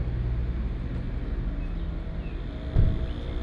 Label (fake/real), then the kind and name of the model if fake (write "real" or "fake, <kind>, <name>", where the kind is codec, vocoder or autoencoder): real